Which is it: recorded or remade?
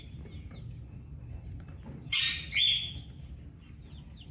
recorded